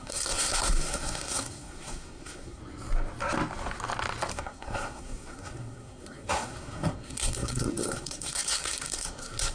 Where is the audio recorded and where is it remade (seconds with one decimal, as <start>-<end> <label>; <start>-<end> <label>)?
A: 0.0-2.6 remade; 2.6-4.3 recorded; 4.3-9.5 remade